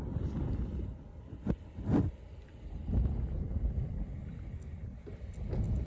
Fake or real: real